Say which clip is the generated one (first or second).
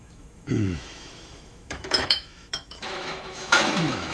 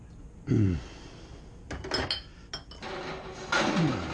first